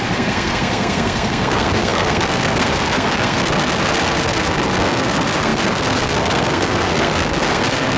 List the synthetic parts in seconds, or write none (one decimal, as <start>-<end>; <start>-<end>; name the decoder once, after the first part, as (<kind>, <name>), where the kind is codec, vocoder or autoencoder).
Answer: 0.0-8.0 (codec, SNAC)